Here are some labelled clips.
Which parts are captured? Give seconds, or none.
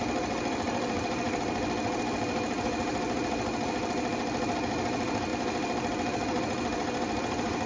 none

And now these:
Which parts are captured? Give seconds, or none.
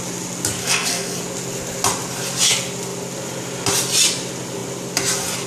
0.0-0.6; 1.2-5.5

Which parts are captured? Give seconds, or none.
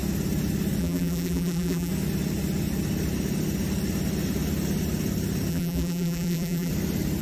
0.0-0.8; 1.9-5.5; 6.7-7.2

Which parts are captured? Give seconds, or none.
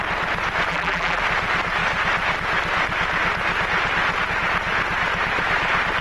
0.0-0.7; 1.2-6.0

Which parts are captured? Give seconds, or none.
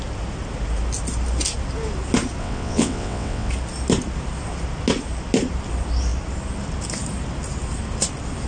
0.0-2.4; 3.5-8.5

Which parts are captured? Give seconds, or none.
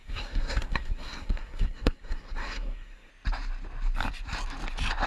3.1-5.1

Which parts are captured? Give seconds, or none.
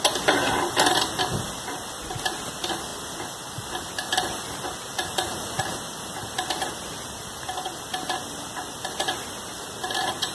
0.0-10.3